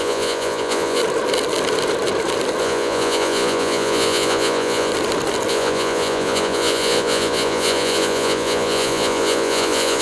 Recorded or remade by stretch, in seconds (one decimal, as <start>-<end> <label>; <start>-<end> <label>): 0.0-1.0 remade; 1.0-2.6 recorded; 2.6-4.9 remade; 4.9-5.5 recorded; 5.5-10.0 remade